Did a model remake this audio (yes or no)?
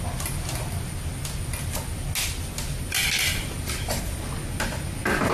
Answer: no